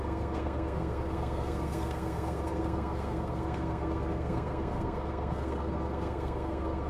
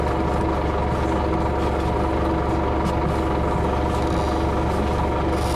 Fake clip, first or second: first